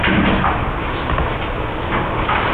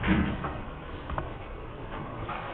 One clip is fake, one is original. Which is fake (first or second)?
second